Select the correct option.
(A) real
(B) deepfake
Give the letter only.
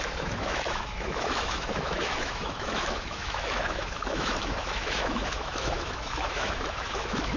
B